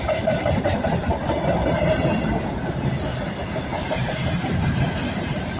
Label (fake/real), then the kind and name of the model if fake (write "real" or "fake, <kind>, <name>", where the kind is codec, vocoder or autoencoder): fake, vocoder, BigVGAN v2